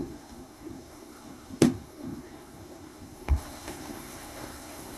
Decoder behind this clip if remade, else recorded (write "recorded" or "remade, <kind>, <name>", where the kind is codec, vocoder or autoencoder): remade, codec, SNAC